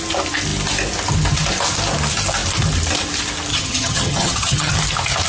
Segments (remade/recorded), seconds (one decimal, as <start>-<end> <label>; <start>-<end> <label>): 0.0-3.5 recorded; 3.5-4.7 remade; 4.7-5.3 recorded